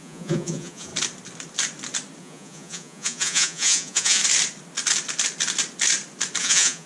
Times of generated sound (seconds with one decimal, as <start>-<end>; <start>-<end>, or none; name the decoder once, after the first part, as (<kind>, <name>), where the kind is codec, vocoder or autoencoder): 0.0-0.9 (vocoder, Vocos); 2.2-4.2; 6.4-6.9